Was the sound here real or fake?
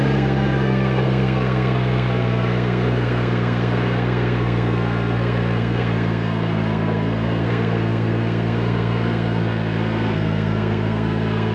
fake